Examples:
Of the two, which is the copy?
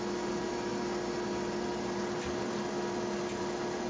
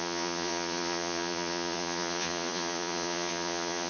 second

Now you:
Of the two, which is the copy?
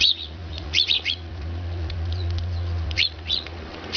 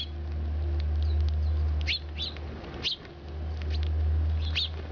first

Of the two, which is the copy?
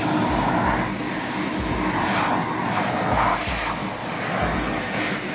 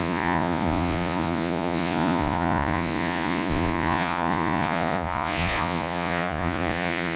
second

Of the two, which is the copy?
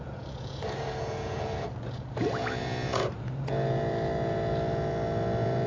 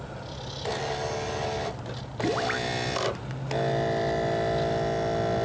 first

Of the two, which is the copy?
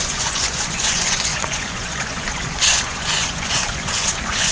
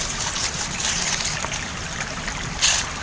first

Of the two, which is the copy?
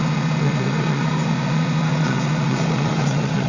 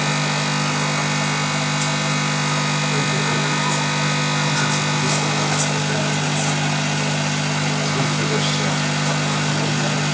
first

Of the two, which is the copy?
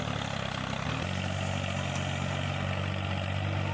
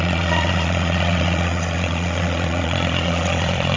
second